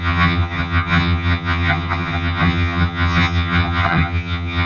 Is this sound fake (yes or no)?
yes